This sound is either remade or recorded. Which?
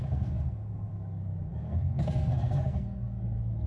remade